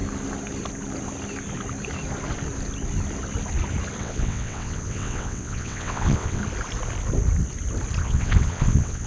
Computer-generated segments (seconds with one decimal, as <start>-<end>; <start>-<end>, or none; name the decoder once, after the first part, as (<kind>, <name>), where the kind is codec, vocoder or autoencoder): 4.0-6.4 (vocoder, WaveNeXt); 8.0-9.1